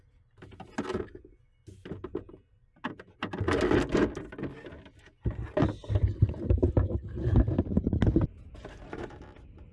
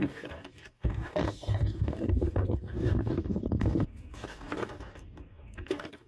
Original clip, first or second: first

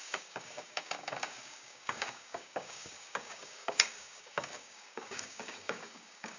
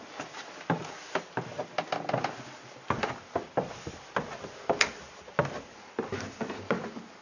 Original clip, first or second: second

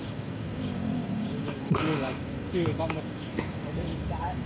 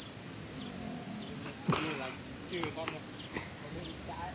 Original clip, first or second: second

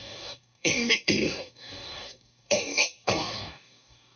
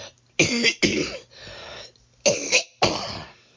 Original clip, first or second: second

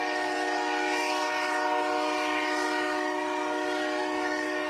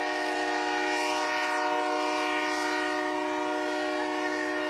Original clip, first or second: second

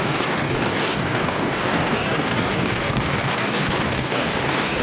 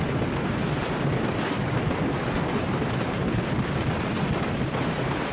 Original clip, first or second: second